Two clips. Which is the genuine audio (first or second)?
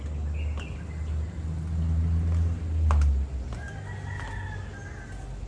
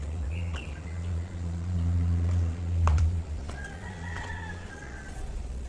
first